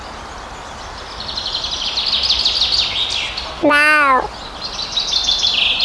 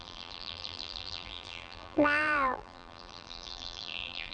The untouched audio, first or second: first